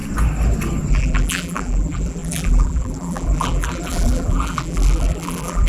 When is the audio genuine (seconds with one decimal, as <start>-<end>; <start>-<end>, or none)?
0.0-0.9